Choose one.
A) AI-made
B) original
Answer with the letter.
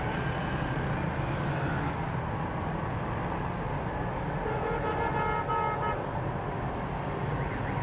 B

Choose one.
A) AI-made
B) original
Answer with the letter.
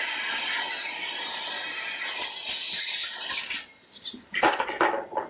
B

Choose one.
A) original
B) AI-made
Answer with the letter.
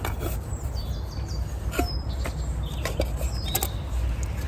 A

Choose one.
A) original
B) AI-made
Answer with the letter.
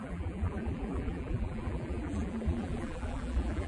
B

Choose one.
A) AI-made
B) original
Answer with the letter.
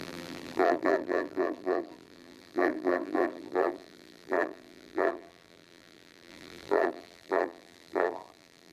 A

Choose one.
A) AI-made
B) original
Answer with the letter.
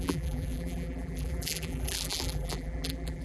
A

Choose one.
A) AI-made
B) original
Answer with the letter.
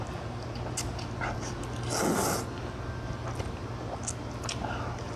B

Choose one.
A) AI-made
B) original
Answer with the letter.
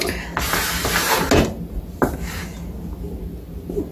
B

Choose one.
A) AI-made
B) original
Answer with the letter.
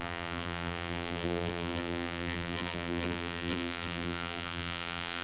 A